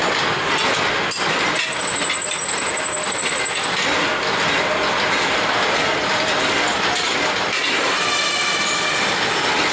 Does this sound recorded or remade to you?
recorded